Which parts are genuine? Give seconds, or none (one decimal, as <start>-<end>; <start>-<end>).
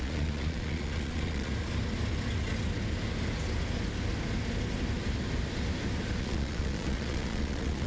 1.5-6.2